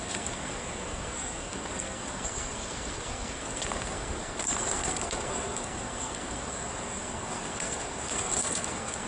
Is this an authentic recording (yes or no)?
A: no